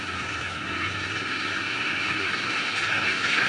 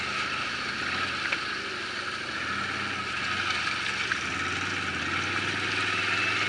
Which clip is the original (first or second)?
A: second